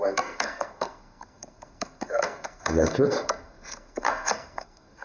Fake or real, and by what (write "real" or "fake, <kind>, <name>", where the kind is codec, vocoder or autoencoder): fake, codec, SNAC